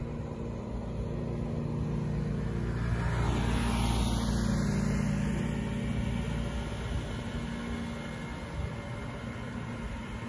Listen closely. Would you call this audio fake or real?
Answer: real